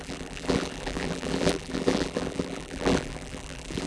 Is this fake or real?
fake